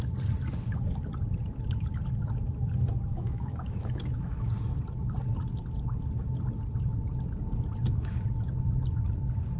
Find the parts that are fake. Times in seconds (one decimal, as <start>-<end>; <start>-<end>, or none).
3.1-4.5